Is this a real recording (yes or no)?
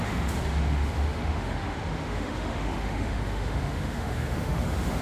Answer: no